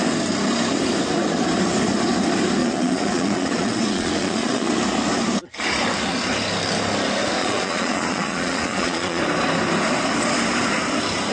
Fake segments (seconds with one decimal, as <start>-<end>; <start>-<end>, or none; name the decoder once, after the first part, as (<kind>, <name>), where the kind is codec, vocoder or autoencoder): 2.6-4.7 (vocoder, Vocos); 7.4-9.2